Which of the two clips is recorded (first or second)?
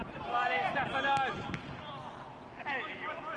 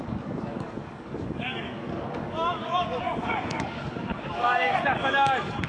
first